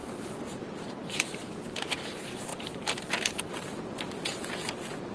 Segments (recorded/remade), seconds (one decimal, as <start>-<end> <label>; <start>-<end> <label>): 0.0-1.5 remade; 1.5-2.5 recorded; 2.5-3.9 remade; 3.9-5.1 recorded